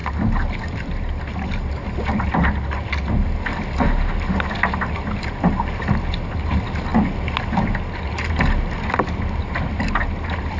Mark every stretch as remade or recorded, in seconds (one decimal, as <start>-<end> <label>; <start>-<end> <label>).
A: 0.0-10.6 recorded